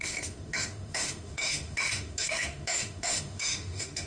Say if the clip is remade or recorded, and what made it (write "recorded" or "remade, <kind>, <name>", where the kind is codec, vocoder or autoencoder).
remade, autoencoder, DAC-VAE